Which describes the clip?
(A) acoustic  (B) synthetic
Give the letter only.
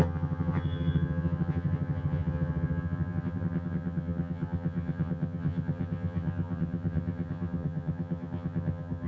B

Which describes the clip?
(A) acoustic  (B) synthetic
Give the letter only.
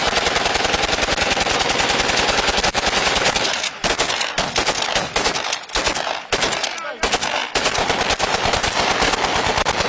A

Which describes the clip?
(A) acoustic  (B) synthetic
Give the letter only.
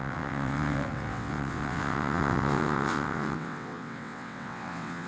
B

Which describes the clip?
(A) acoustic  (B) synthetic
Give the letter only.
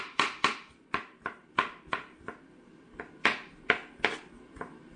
A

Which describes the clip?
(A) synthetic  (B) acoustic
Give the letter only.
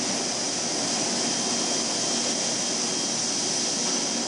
B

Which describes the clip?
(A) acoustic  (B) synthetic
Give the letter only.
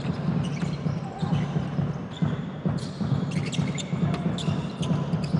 B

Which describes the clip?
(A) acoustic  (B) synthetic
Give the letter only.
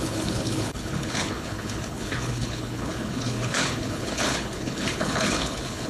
B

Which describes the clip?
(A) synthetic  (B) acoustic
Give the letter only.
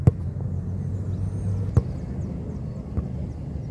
B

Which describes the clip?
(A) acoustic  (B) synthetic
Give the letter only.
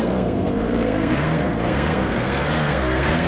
B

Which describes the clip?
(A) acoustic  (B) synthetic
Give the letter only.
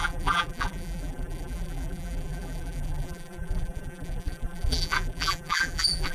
B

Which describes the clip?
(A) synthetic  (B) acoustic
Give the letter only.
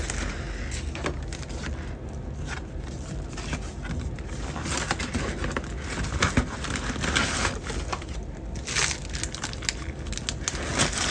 B